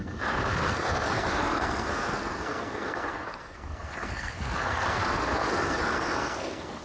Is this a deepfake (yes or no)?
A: yes